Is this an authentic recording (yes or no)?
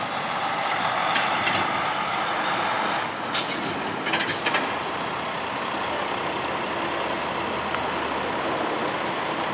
yes